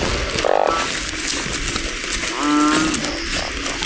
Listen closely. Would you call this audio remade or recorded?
recorded